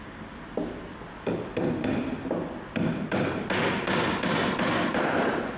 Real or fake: fake